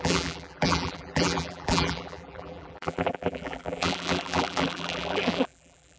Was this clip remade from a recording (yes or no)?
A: yes